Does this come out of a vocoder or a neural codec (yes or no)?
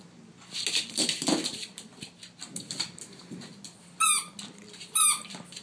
no